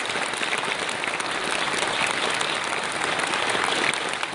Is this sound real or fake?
real